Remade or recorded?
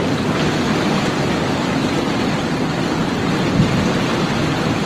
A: recorded